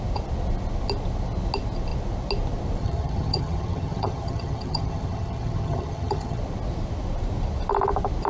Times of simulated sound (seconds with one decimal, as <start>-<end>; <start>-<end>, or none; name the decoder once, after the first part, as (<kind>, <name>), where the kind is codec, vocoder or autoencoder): 2.8-6.4 (vocoder, HiFi-GAN)

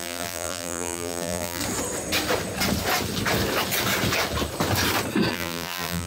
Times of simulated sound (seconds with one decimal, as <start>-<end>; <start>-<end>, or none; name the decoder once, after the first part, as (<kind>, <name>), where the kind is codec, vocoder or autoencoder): 0.0-1.6 (vocoder, BigVGAN v2); 5.3-6.1

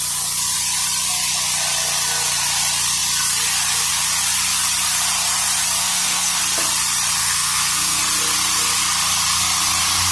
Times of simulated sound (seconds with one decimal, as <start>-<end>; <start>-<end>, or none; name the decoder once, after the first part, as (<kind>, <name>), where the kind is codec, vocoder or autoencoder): 5.8-6.4 (codec, SNAC); 7.2-8.0

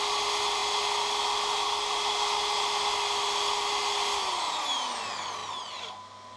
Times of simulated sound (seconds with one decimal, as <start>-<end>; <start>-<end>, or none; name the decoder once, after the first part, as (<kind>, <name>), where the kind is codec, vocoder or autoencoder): none

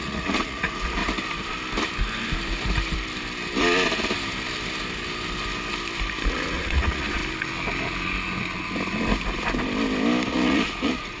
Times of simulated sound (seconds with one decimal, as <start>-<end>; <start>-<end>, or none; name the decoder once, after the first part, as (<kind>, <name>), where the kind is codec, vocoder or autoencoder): 0.0-1.0 (vocoder, Vocos); 6.3-7.2; 10.3-11.2

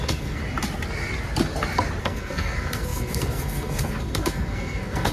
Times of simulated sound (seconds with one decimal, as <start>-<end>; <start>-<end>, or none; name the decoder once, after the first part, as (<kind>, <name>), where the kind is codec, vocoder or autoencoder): 0.0-0.4 (codec, SNAC); 2.0-5.1